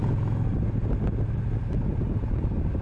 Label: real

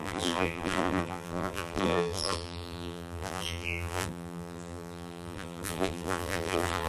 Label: fake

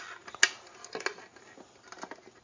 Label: real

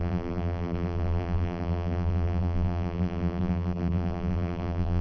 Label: fake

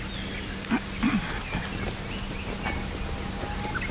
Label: real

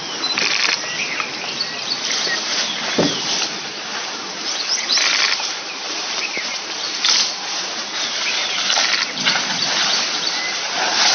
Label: fake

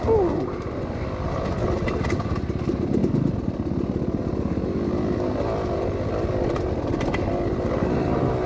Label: real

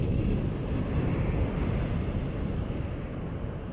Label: real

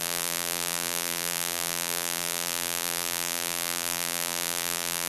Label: fake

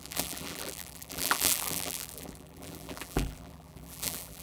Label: fake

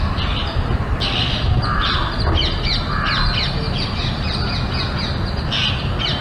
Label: real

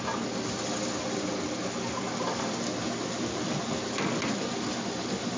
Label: real